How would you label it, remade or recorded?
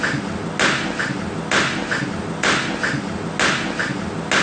recorded